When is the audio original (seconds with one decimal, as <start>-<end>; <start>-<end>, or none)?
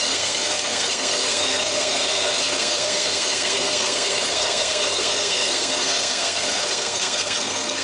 none